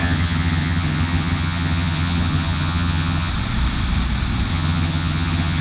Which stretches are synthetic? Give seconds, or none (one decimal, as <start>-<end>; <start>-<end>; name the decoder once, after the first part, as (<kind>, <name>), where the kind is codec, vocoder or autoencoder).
0.0-3.3 (vocoder, HiFi-GAN); 4.5-5.6